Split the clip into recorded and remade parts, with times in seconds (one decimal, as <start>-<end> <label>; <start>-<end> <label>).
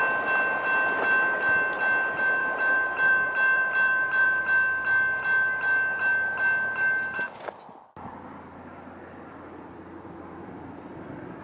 0.0-2.4 recorded; 2.4-4.4 remade; 4.4-11.4 recorded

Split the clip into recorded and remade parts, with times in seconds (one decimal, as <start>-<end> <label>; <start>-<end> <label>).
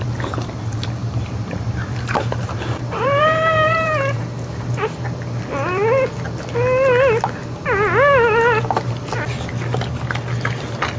0.0-1.0 recorded; 1.0-5.0 remade; 5.0-11.0 recorded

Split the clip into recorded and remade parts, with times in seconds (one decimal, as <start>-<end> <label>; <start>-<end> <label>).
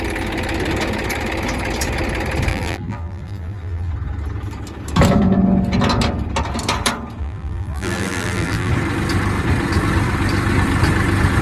0.0-2.5 recorded; 2.5-3.9 remade; 3.9-7.2 recorded; 7.2-8.7 remade; 8.7-11.4 recorded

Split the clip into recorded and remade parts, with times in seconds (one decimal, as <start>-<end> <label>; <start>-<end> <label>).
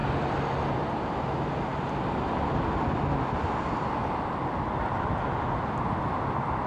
0.0-6.7 recorded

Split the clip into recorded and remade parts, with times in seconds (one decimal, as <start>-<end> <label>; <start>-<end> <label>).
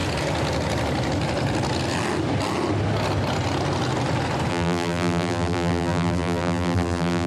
0.0-4.5 recorded; 4.5-7.3 remade